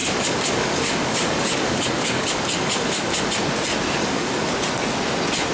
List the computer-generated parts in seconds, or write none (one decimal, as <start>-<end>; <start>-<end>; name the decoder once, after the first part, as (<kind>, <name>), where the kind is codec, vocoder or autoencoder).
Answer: 0.0-3.3 (codec, DAC); 4.0-4.5